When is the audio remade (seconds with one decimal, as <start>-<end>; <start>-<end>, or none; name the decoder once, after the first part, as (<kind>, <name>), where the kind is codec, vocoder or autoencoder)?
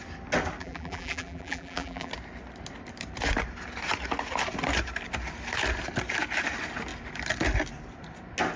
0.6-2.1 (vocoder, BigVGAN v2)